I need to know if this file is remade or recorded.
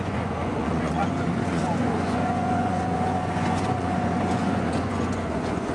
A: remade